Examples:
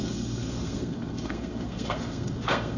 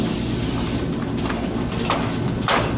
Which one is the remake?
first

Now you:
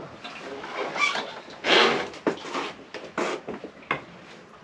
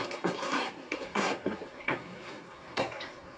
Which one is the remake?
second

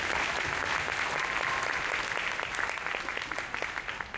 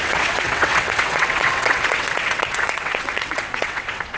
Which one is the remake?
second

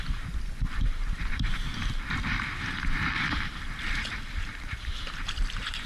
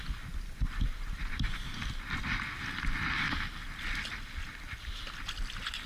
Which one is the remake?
first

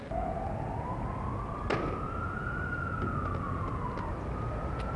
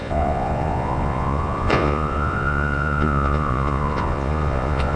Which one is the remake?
second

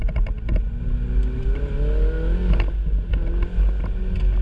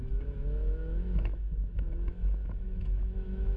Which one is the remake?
second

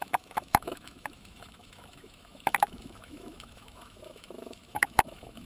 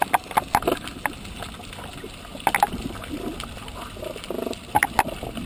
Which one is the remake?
first